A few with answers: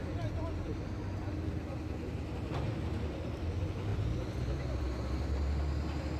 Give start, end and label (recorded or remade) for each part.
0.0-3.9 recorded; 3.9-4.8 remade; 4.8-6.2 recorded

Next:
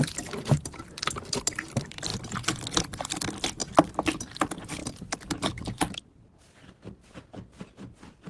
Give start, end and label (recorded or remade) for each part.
0.0-3.6 remade; 3.6-4.2 recorded; 4.2-4.8 remade; 4.8-7.6 recorded; 7.6-8.3 remade

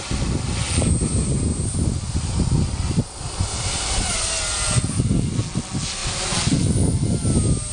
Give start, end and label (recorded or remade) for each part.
0.0-7.7 recorded

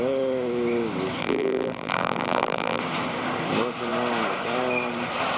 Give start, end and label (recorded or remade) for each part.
0.0-1.2 recorded; 1.2-2.8 remade; 2.8-5.4 recorded